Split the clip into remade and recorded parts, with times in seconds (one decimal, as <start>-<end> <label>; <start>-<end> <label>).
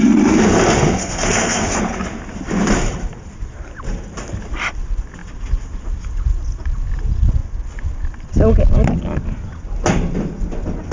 0.0-1.0 recorded; 1.0-1.8 remade; 1.8-10.9 recorded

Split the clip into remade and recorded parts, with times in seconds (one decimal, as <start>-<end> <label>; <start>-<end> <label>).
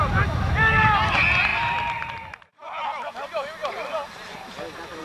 0.0-5.0 recorded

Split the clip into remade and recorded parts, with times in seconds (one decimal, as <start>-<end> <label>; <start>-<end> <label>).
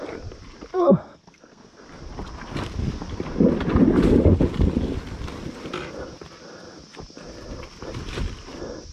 0.0-0.7 recorded; 0.7-1.8 remade; 1.8-8.9 recorded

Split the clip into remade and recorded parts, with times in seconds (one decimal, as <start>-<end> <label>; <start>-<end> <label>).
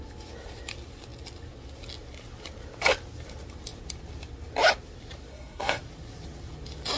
0.0-5.3 recorded; 5.3-5.8 remade; 5.8-7.0 recorded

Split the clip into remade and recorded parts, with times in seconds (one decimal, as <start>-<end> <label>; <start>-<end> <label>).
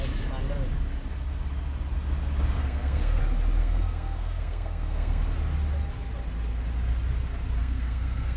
0.0-2.6 recorded; 2.6-3.2 remade; 3.2-3.6 recorded; 3.6-5.2 remade; 5.2-7.6 recorded; 7.6-8.4 remade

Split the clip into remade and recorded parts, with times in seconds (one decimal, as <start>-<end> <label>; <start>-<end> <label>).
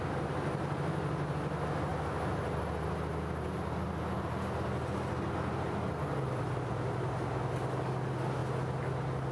0.0-9.3 recorded